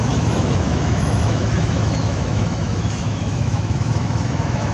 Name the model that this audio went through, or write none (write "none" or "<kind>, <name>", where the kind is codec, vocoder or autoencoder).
autoencoder, DAC-VAE